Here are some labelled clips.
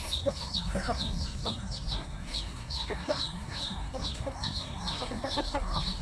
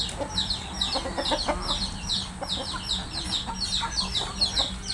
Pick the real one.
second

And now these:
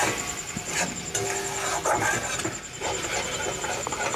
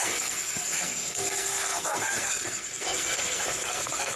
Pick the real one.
first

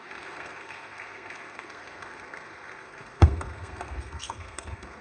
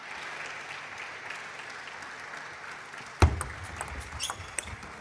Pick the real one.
second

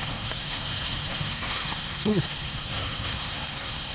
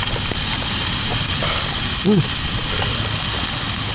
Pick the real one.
second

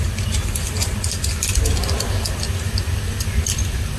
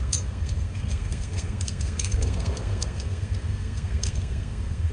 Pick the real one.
first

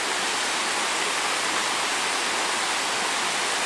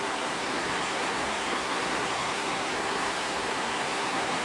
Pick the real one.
first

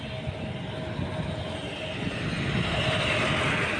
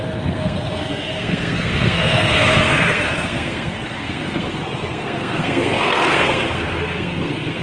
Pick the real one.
first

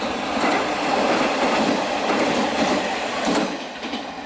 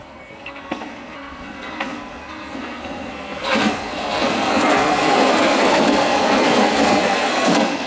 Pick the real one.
first